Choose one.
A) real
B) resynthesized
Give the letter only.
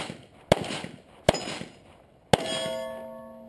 A